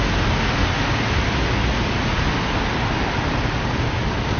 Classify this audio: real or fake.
real